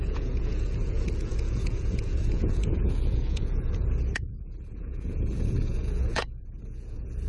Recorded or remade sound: remade